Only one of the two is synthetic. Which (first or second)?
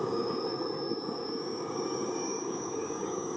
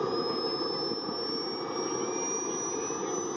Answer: first